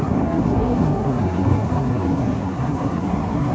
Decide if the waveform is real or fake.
fake